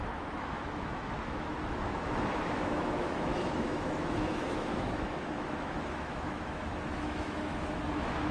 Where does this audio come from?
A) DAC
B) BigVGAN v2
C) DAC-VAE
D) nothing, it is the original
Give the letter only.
C